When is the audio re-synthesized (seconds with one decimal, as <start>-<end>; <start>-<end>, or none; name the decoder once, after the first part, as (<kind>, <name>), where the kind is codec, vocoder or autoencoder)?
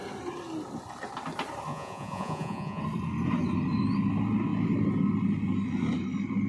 1.7-2.8 (vocoder, Vocos)